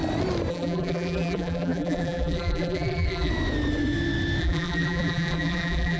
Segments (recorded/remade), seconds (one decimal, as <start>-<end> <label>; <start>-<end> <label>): 0.0-0.5 recorded; 0.5-3.3 remade; 3.3-4.4 recorded; 4.4-6.0 remade